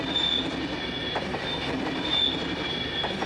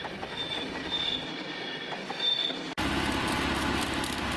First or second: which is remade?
second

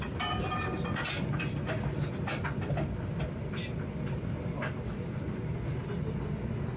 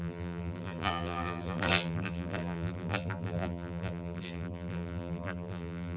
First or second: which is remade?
second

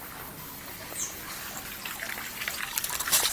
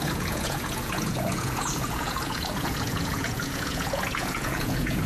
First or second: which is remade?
second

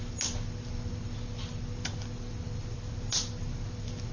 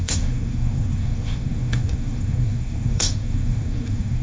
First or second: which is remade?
second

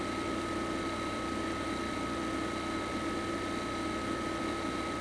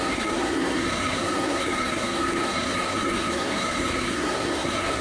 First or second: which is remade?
second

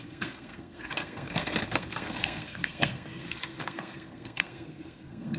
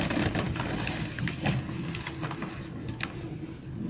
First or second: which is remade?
first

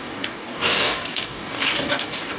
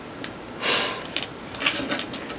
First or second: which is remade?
first